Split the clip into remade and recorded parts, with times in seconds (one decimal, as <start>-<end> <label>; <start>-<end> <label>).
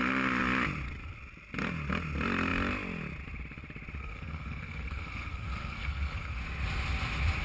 0.0-4.0 recorded; 4.0-6.4 remade; 6.4-7.4 recorded